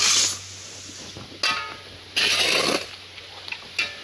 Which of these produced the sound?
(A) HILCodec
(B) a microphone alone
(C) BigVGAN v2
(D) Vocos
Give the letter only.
B